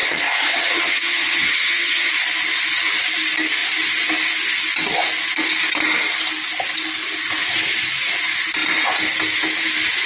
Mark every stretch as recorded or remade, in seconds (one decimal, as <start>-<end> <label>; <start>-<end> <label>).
0.0-2.1 remade; 2.1-10.1 recorded